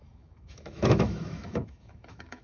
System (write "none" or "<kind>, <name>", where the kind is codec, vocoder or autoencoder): autoencoder, DAC-VAE